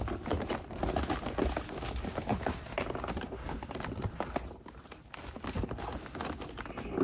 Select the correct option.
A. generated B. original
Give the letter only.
B